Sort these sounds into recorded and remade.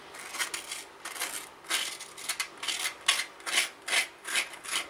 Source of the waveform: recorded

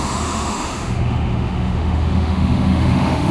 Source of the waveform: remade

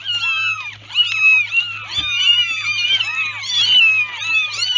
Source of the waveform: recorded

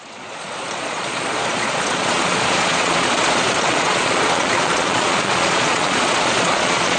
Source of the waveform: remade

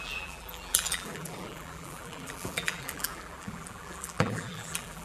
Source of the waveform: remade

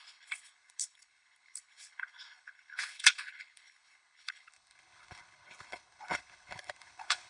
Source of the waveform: remade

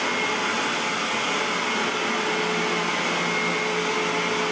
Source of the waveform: recorded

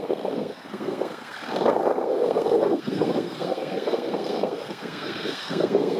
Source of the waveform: remade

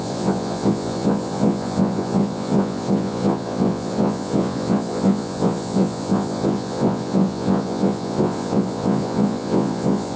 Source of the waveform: remade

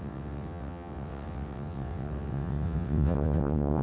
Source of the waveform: remade